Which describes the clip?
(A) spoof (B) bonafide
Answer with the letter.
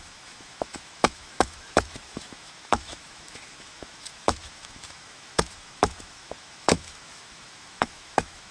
A